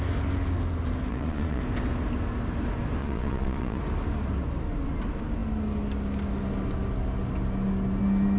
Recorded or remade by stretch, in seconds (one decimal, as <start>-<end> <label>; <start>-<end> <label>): 0.0-1.1 recorded; 1.1-1.6 remade; 1.6-3.0 recorded; 3.0-3.8 remade; 3.8-8.4 recorded